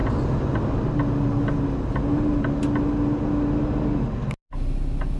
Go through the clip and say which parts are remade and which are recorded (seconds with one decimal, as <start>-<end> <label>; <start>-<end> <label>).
0.0-5.2 recorded